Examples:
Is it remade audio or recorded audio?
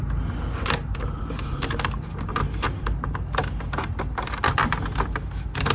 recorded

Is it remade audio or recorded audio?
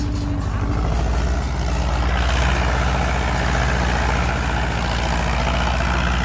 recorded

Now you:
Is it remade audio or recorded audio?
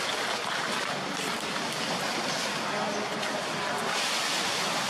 recorded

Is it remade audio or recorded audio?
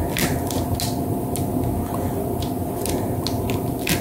recorded